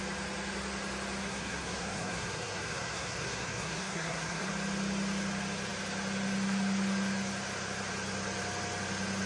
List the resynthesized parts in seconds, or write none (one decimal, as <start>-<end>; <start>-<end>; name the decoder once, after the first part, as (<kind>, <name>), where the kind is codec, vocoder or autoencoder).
1.2-4.5 (codec, SNAC)